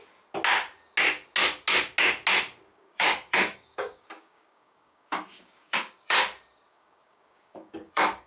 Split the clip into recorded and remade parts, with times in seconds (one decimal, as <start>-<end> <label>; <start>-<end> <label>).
0.0-2.7 recorded; 2.7-6.2 remade; 6.2-6.7 recorded; 6.7-8.3 remade